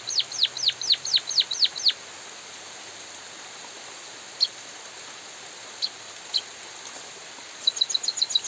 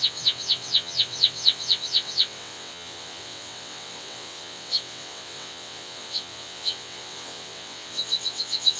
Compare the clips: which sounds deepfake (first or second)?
second